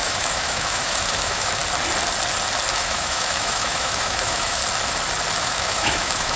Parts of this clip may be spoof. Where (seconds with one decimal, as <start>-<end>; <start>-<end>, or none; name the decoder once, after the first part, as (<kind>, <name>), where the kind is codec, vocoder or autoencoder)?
0.0-1.6 (autoencoder, DAC-VAE); 2.7-4.6; 5.4-6.4

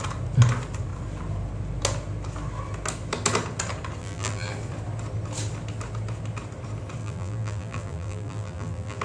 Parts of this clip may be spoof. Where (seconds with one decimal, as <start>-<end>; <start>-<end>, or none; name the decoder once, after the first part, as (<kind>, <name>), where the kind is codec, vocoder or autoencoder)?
4.0-4.5 (vocoder, BigVGAN v2); 7.0-9.0

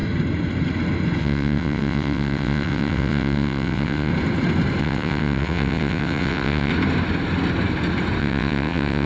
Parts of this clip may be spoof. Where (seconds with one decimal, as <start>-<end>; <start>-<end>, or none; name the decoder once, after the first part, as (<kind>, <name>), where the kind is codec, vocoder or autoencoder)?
1.2-4.1 (vocoder, WaveNeXt); 4.8-6.7; 8.2-9.1

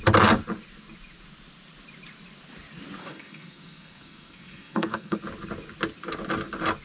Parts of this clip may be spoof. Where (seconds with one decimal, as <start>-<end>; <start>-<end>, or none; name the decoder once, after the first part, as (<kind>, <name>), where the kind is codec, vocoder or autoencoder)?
3.0-5.2 (codec, SNAC)

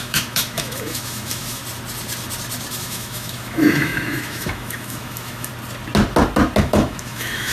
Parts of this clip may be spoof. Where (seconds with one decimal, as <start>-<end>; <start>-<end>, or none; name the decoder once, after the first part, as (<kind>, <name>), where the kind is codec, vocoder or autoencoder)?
0.0-1.6 (autoencoder, DAC-VAE); 2.7-5.5; 6.6-7.5

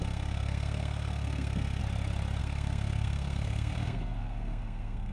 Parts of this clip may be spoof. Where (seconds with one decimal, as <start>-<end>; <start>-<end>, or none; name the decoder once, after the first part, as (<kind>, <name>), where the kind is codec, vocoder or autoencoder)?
0.0-1.8 (codec, SNAC); 2.4-5.1